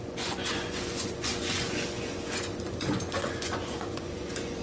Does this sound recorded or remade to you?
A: remade